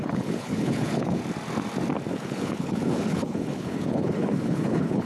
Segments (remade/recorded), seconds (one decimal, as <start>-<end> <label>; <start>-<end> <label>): 0.0-1.2 remade; 1.2-2.1 recorded; 2.1-5.1 remade